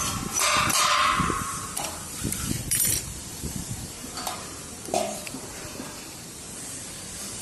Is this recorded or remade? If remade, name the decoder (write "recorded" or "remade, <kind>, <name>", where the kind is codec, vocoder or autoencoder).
remade, vocoder, BigVGAN v2